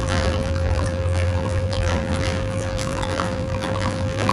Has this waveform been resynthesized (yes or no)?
yes